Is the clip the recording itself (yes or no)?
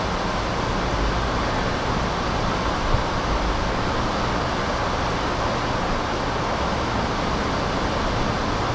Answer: yes